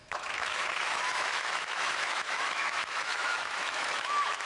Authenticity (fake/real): fake